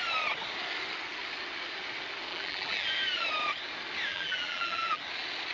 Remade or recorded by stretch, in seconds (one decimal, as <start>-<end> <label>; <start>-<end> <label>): 0.0-2.3 recorded; 2.3-2.9 remade; 2.9-4.1 recorded; 4.1-5.0 remade; 5.0-5.5 recorded